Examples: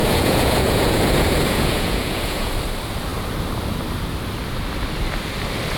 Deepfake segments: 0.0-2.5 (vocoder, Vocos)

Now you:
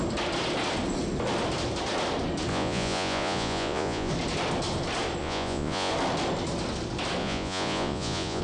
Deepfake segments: 2.5-4.1 (vocoder, Vocos); 5.2-5.9; 7.2-8.4

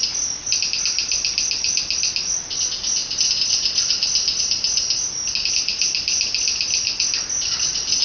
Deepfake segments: none